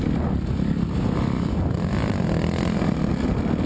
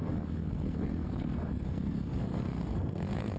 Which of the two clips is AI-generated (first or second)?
second